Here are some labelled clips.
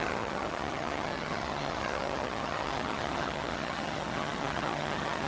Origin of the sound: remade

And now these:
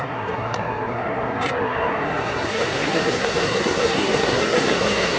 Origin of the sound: remade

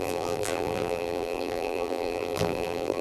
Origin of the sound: remade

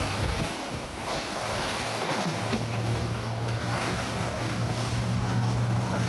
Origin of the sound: remade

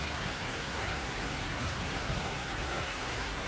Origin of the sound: remade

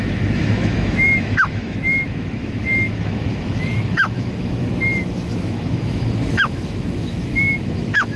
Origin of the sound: remade